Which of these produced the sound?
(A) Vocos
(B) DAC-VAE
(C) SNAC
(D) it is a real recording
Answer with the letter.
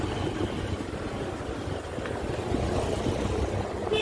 D